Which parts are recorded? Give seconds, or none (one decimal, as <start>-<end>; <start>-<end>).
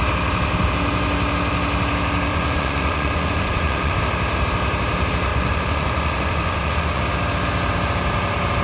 0.0-2.3; 4.0-5.3; 7.0-8.6